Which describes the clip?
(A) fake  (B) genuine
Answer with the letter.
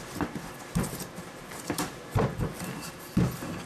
B